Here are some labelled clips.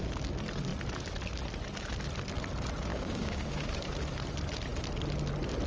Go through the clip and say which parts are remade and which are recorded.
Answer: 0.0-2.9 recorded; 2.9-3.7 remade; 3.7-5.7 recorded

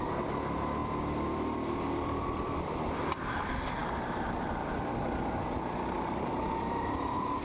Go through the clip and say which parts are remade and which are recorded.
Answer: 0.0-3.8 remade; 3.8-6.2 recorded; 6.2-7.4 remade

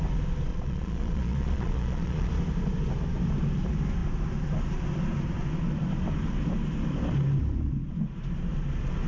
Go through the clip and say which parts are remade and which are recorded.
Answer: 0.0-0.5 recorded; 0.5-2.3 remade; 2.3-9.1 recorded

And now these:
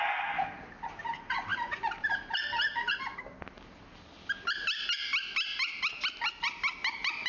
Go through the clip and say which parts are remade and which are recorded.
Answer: 0.0-1.5 recorded; 1.5-3.0 remade; 3.0-7.3 recorded

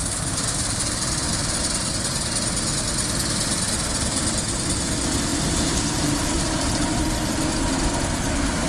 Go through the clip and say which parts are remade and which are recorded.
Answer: 0.0-1.9 remade; 1.9-5.3 recorded; 5.3-7.0 remade; 7.0-8.7 recorded